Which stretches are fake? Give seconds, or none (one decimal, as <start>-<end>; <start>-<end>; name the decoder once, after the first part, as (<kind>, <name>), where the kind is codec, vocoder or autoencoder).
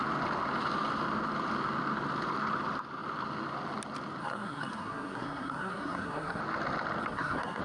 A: 4.2-6.4 (codec, SNAC); 7.0-7.6